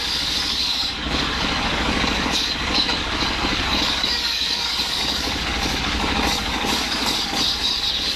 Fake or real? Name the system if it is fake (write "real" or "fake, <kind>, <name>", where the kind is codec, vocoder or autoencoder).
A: fake, codec, DAC